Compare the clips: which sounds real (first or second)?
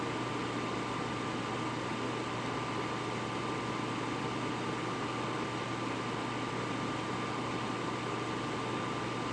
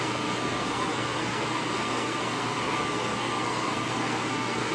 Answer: first